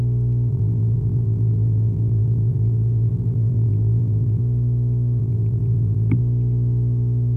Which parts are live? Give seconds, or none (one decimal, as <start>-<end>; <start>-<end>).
0.0-0.5; 4.4-5.2; 6.2-7.4